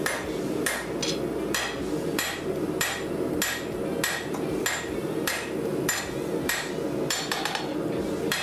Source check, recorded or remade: recorded